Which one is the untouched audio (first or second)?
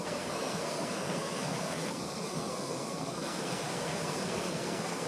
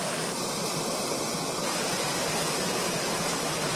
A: second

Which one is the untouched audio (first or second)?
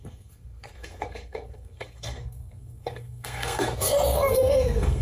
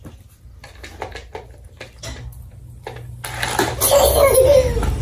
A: second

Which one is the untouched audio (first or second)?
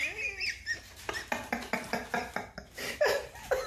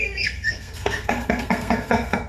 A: first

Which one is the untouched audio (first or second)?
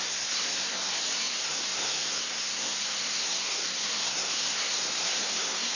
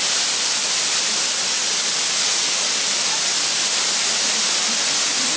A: second